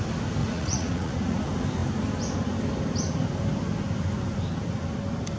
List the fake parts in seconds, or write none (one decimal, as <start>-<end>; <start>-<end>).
0.4-1.4